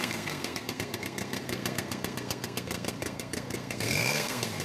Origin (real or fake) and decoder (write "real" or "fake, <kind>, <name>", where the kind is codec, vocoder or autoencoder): fake, codec, SNAC